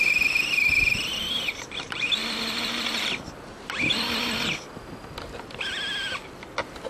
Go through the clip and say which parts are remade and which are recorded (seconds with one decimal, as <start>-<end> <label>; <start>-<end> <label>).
0.0-6.9 recorded